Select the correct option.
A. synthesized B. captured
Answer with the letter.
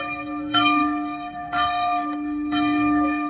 A